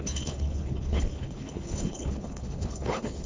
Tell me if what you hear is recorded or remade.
remade